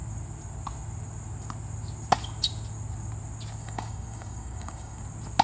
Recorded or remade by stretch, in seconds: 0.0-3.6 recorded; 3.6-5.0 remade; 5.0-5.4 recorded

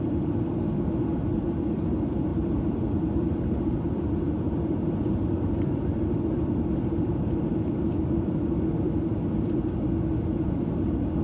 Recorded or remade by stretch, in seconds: 0.0-2.3 remade; 2.3-3.1 recorded; 3.1-11.2 remade

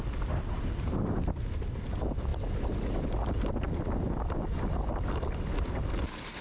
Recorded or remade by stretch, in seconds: 0.0-6.4 recorded

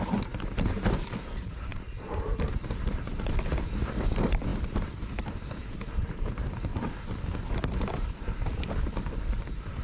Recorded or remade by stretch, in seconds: 0.0-6.7 remade; 6.7-7.6 recorded; 7.6-9.8 remade